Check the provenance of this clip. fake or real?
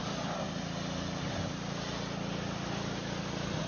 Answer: real